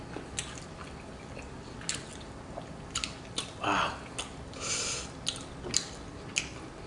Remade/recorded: recorded